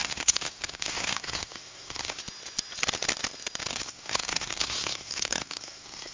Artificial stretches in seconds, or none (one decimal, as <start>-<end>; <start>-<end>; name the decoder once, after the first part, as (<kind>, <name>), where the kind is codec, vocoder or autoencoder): 0.0-2.2 (codec, SNAC); 3.7-6.1